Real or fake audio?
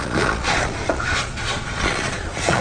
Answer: fake